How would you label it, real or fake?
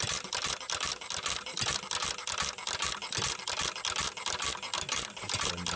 real